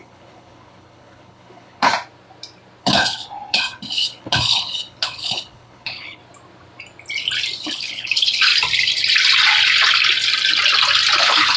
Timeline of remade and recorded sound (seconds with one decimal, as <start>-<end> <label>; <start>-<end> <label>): 0.0-1.9 remade; 1.9-2.8 recorded; 2.8-6.2 remade; 6.2-7.6 recorded; 7.6-8.5 remade; 8.5-11.2 recorded; 11.2-11.6 remade

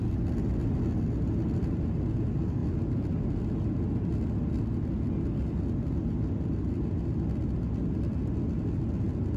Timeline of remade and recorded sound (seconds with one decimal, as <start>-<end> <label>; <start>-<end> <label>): 0.0-9.4 recorded

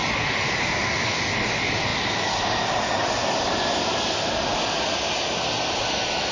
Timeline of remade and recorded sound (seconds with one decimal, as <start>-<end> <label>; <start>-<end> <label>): 0.0-6.3 recorded